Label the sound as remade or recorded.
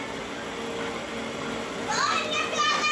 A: recorded